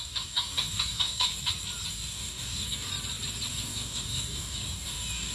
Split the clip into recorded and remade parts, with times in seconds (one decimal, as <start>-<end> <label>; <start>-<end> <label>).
0.0-1.3 remade; 1.3-1.9 recorded; 1.9-2.9 remade; 2.9-3.5 recorded; 3.5-5.3 remade